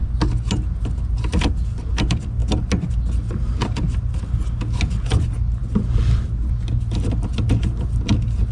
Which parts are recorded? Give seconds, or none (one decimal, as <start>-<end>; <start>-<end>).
0.0-8.5

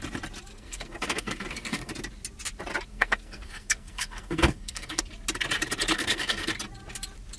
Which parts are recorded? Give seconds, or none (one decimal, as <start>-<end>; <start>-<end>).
0.0-0.5; 1.9-2.9; 5.0-5.9; 6.5-7.4

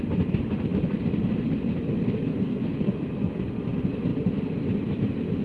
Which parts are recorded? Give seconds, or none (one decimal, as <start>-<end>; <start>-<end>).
0.0-2.3; 2.9-5.4

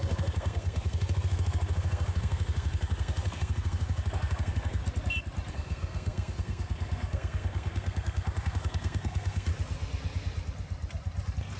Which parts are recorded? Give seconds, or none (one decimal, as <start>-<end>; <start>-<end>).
4.8-5.5; 9.5-11.6